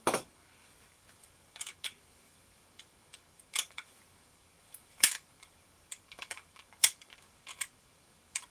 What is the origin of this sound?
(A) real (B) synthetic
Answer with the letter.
B